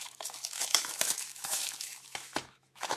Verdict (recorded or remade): remade